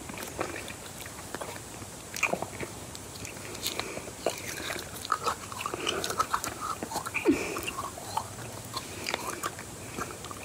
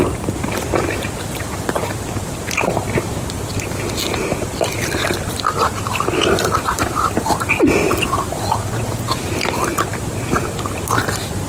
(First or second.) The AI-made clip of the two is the first